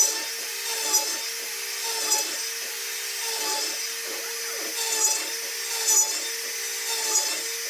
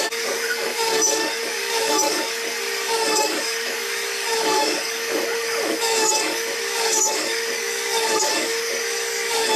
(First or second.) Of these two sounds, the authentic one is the first